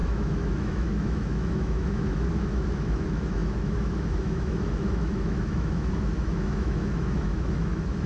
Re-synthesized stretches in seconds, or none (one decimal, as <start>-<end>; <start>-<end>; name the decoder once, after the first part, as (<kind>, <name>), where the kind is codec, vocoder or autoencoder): 0.0-8.1 (autoencoder, DAC-VAE)